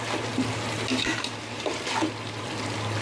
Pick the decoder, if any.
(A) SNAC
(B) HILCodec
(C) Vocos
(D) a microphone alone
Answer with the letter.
D